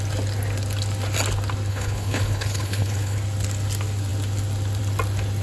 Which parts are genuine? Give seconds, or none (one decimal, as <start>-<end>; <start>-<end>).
0.0-1.7; 3.2-5.4